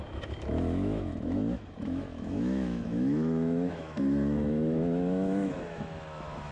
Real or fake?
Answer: fake